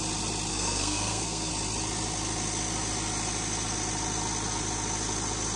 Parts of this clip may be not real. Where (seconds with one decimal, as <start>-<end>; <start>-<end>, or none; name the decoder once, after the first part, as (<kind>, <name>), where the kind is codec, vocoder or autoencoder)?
0.5-1.5 (codec, SNAC)